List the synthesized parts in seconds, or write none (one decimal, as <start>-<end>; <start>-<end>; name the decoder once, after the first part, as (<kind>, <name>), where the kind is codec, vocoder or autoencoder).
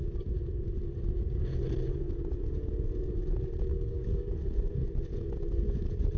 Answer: 3.7-4.3 (codec, DAC)